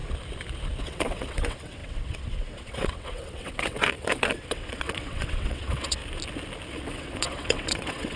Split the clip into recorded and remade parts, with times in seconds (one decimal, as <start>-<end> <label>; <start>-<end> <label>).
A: 0.0-0.8 recorded; 0.8-6.0 remade; 6.0-6.7 recorded; 6.7-8.2 remade